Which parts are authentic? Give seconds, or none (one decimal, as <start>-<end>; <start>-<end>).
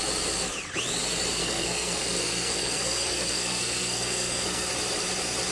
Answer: 0.0-1.4; 4.7-5.5